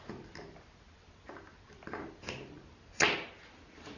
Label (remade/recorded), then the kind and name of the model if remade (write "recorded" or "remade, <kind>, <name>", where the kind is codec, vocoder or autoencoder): recorded